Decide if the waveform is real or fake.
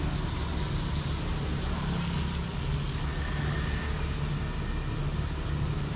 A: real